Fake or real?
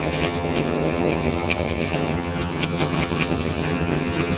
fake